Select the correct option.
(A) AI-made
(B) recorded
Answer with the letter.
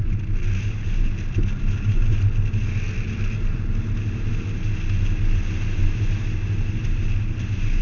B